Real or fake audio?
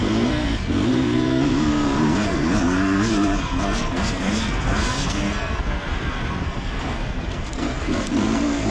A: fake